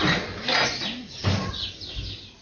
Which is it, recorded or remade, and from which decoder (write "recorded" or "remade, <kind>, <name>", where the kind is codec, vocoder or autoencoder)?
recorded